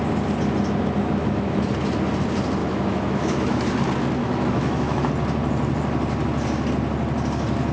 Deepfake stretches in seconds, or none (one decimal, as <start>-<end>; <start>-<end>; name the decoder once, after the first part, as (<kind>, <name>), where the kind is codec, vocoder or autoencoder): 1.2-1.7 (autoencoder, DAC-VAE); 2.6-3.7; 4.2-5.1